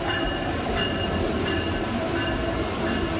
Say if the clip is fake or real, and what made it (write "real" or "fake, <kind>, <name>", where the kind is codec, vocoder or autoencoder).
real